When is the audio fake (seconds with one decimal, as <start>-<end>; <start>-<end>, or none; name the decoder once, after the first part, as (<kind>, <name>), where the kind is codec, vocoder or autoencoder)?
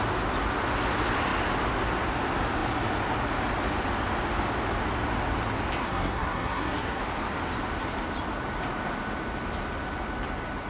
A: 5.8-7.0 (codec, SNAC)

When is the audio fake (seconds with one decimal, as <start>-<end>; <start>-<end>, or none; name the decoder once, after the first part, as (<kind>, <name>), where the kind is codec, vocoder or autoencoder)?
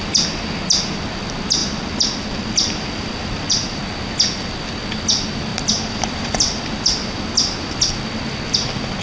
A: 1.6-3.8 (vocoder, BigVGAN v2); 5.5-7.9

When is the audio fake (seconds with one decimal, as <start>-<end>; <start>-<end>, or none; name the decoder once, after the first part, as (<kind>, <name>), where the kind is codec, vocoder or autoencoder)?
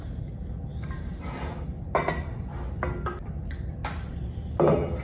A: none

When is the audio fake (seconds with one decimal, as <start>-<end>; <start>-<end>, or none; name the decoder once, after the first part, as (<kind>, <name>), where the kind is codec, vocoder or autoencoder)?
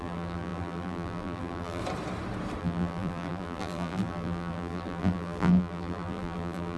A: 0.0-1.8 (vocoder, BigVGAN v2); 2.6-6.8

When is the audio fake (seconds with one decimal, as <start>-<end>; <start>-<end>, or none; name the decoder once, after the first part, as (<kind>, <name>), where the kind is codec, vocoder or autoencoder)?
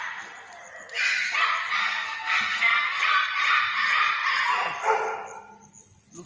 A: 1.8-3.0 (codec, SNAC)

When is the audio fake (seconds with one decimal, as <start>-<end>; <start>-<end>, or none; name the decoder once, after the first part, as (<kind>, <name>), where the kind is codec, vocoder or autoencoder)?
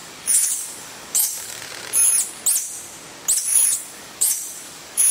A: 0.0-1.6 (codec, DAC); 3.5-5.1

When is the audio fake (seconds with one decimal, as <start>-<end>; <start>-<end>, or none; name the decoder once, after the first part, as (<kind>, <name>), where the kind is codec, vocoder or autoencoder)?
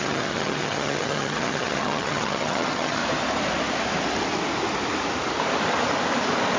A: 0.0-3.0 (vocoder, HiFi-GAN)